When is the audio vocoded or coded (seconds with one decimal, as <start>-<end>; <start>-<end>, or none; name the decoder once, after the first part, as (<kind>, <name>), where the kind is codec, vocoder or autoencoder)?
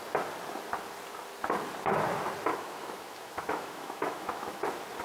2.5-4.6 (autoencoder, DAC-VAE)